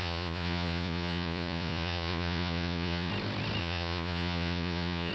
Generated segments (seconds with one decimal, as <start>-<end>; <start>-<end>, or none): 0.0-3.1; 3.6-5.1